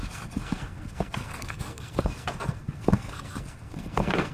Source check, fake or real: fake